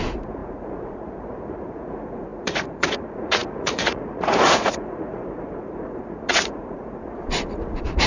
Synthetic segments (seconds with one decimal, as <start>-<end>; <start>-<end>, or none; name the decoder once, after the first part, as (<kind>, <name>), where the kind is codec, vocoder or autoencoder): 0.0-8.1 (vocoder, Vocos)